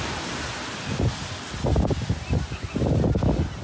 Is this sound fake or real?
real